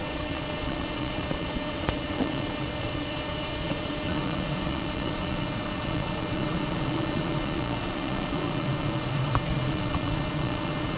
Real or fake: fake